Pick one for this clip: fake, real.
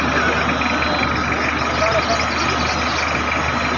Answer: real